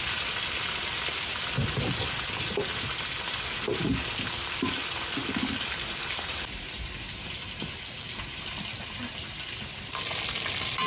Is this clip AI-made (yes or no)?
no